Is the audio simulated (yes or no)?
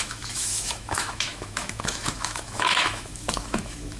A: yes